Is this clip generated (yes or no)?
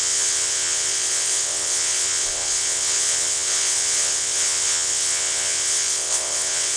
yes